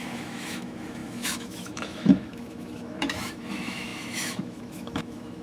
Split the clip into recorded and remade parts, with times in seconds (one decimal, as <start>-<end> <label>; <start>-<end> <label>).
0.0-5.4 remade